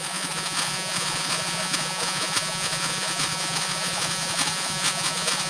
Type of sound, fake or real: fake